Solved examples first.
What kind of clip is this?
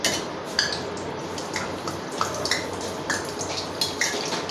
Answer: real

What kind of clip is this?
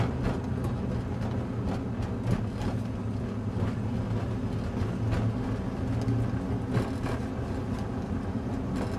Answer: real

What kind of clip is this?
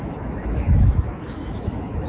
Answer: fake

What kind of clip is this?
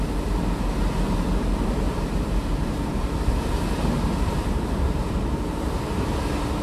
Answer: fake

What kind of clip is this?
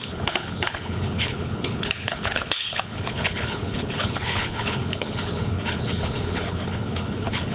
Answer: fake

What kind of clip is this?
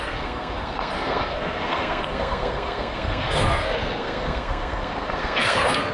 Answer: fake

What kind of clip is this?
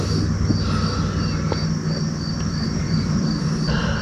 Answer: real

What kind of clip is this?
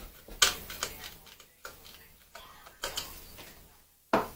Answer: real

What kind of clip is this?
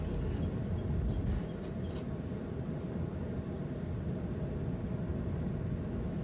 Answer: real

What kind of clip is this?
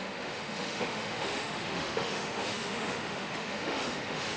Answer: fake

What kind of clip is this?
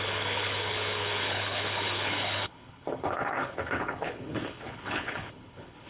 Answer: fake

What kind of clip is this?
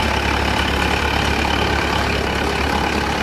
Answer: real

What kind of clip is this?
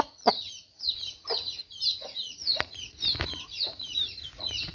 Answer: fake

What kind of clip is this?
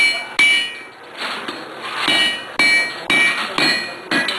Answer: real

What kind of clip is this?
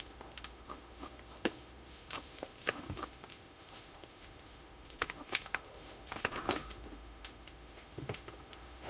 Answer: fake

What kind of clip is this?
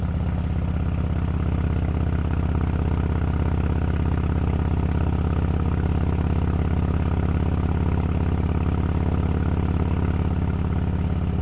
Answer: real